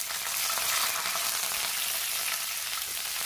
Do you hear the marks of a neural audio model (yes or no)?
no